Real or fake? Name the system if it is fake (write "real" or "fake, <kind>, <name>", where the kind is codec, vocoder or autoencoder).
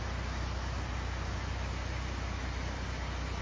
real